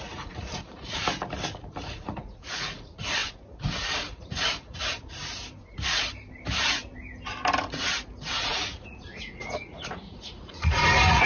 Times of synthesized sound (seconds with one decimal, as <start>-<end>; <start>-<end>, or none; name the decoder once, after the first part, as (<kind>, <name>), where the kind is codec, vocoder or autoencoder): 0.0-1.0 (vocoder, Vocos); 1.8-5.2; 8.5-11.3

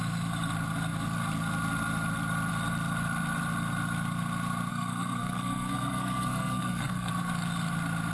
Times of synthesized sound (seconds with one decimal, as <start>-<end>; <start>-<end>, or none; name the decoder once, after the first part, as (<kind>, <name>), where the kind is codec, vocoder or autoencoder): 4.7-7.1 (codec, SNAC)

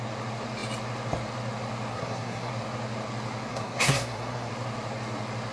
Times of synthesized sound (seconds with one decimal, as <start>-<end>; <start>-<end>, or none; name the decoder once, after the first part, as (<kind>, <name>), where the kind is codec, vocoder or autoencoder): 1.9-2.5 (codec, SNAC); 3.5-4.5

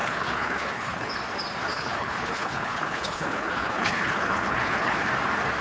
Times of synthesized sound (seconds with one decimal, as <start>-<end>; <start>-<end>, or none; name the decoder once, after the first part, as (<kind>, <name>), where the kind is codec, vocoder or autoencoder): 0.0-1.1 (codec, HILCodec); 1.7-5.1

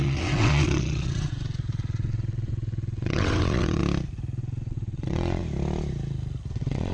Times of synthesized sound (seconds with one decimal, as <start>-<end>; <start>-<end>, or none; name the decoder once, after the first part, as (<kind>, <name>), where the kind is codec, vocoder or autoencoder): 0.0-3.8 (vocoder, WaveNeXt); 4.4-5.4; 6.5-6.9

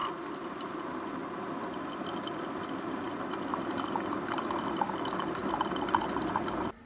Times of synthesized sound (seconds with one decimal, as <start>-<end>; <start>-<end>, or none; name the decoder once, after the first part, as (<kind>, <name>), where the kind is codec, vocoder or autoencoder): 5.4-6.9 (vocoder, BigVGAN v2)

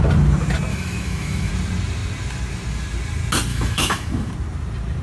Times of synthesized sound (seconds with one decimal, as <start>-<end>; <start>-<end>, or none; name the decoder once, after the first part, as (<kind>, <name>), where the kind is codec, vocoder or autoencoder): 0.7-1.5 (autoencoder, DAC-VAE); 3.5-4.3